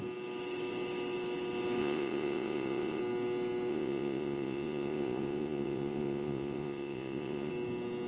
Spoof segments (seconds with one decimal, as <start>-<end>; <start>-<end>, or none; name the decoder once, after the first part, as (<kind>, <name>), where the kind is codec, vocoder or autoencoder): 1.8-3.0 (vocoder, Vocos); 3.7-7.5